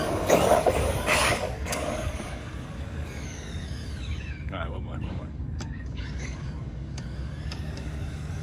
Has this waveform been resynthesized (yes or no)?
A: yes